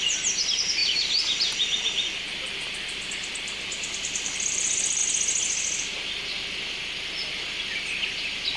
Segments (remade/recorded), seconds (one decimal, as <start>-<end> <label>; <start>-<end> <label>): 0.0-5.0 remade; 5.0-5.8 recorded; 5.8-8.6 remade